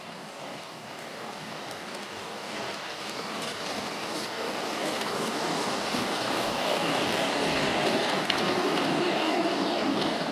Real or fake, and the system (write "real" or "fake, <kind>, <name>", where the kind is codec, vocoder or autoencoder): fake, codec, DAC